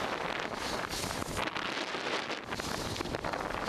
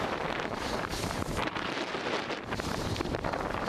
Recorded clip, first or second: first